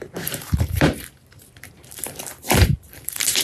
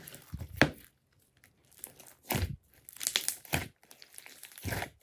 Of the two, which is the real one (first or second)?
second